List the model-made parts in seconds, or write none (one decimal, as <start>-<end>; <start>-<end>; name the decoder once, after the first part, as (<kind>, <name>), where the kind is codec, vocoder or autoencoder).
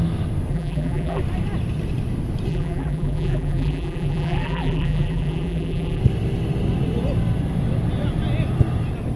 0.5-1.2 (vocoder, BigVGAN v2); 2.5-6.0